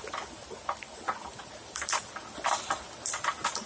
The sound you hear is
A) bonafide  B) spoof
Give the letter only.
A